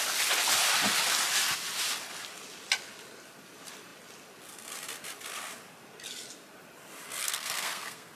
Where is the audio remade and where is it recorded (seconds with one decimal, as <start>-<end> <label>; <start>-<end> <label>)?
0.0-7.2 recorded; 7.2-8.2 remade